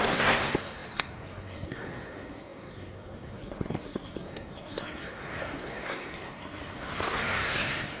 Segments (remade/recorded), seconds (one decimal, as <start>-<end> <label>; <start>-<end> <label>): 0.0-8.0 remade